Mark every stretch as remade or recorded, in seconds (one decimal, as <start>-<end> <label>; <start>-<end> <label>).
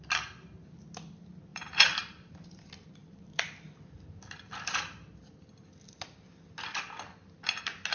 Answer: 0.0-1.5 recorded; 1.5-2.6 remade; 2.6-7.9 recorded